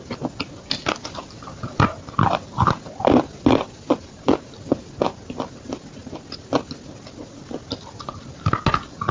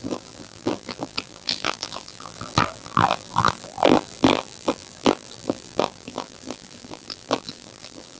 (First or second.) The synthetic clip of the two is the second